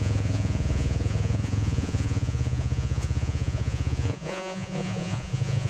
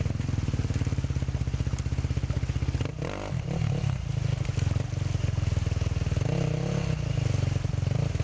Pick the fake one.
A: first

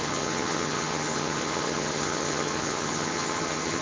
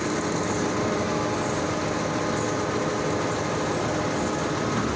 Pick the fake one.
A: first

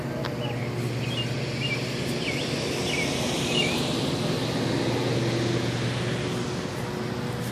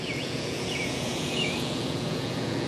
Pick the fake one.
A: second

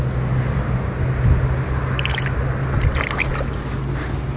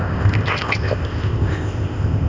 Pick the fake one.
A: second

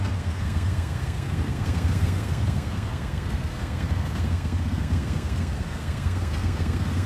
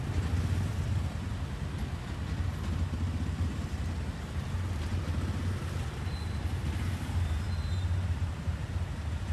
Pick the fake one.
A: first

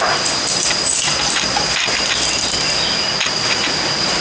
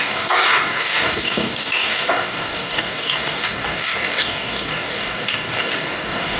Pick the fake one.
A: second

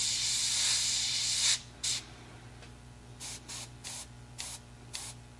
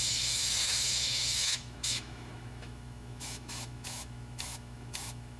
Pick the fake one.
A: second